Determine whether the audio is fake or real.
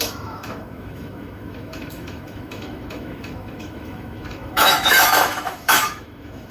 fake